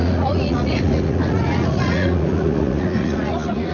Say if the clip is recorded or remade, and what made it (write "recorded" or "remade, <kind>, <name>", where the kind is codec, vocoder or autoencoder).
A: remade, vocoder, Vocos